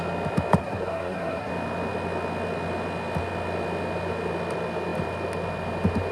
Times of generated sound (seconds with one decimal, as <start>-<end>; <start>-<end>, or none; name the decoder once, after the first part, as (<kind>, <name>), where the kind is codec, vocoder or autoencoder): 0.6-1.5 (codec, SNAC)